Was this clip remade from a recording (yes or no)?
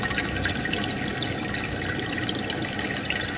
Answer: no